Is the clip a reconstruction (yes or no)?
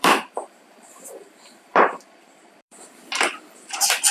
yes